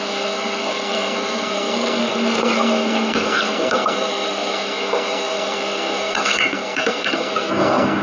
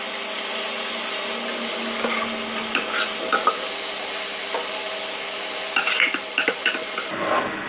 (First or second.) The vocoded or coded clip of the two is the first